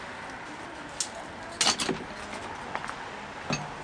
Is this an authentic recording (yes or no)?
yes